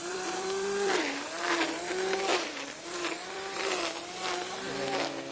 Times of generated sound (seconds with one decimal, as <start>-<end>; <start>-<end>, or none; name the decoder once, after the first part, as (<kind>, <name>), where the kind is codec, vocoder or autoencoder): 0.0-1.0 (vocoder, BigVGAN v2); 2.3-3.8